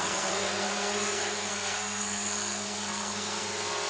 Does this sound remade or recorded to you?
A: remade